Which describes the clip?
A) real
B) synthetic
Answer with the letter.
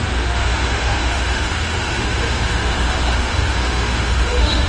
B